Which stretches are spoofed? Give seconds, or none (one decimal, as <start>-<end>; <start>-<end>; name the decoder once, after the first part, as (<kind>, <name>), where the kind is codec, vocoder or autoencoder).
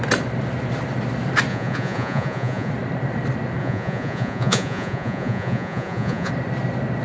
1.5-2.7 (vocoder, Vocos); 3.6-6.3